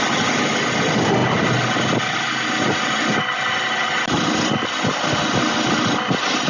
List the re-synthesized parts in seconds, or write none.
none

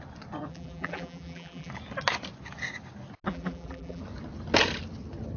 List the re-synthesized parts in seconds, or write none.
0.5-1.7 (vocoder, BigVGAN v2); 3.3-4.0

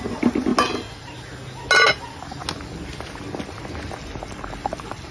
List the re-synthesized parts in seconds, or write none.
none